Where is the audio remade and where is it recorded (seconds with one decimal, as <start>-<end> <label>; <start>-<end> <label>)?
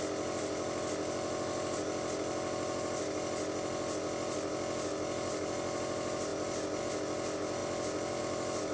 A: 0.0-7.6 recorded; 7.6-8.2 remade; 8.2-8.7 recorded